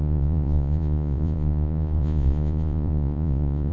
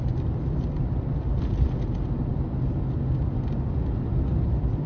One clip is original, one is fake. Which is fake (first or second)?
first